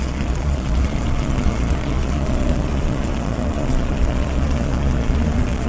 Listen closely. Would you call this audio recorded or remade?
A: remade